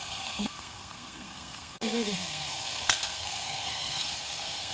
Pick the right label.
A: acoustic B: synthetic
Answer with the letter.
B